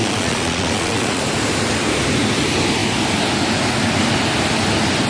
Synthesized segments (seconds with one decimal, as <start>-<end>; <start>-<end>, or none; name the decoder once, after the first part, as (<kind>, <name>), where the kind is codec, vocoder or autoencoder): 0.0-1.2 (vocoder, Vocos)